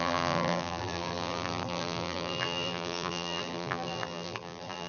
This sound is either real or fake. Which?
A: fake